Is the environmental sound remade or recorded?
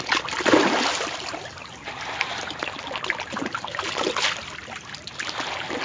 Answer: recorded